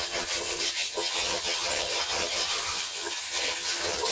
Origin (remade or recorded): remade